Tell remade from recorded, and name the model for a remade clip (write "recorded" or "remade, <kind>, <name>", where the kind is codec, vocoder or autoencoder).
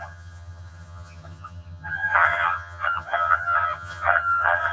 remade, vocoder, HiFi-GAN